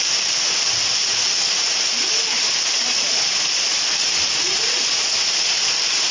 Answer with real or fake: real